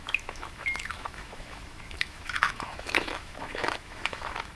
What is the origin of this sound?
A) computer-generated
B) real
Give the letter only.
A